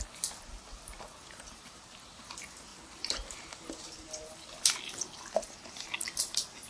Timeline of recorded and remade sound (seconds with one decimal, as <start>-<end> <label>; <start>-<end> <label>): 0.0-1.2 recorded; 1.2-2.2 remade; 2.2-2.7 recorded; 2.7-3.6 remade; 3.6-6.7 recorded

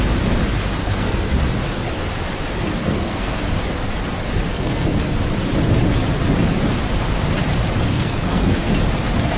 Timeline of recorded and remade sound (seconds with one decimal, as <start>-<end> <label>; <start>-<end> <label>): 0.0-0.8 recorded; 0.8-1.3 remade; 1.3-2.8 recorded; 2.8-3.4 remade; 3.4-4.5 recorded; 4.5-5.2 remade; 5.2-7.9 recorded; 7.9-8.7 remade; 8.7-9.4 recorded

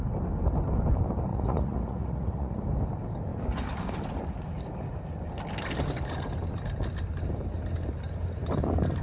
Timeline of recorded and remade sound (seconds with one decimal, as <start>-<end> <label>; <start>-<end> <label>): 0.0-1.3 recorded; 1.3-2.6 remade; 2.6-9.0 recorded